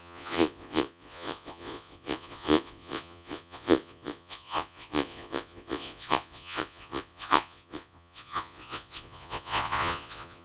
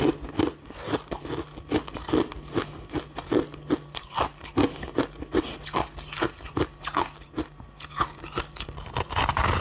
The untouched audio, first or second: second